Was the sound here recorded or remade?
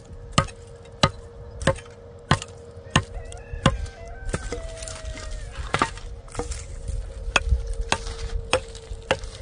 recorded